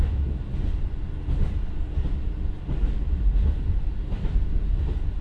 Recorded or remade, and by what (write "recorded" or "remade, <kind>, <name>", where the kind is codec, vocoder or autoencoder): recorded